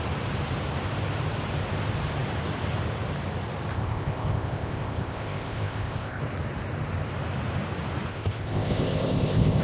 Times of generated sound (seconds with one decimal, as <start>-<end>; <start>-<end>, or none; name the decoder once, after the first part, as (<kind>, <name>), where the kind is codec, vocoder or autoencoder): 3.7-6.2 (codec, ZipCodec); 8.1-9.6